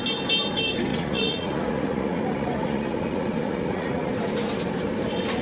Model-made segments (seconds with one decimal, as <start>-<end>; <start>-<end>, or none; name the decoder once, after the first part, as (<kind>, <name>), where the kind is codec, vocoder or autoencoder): 0.9-4.1 (vocoder, Vocos)